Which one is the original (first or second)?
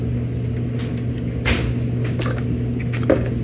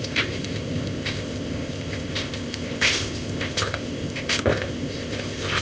first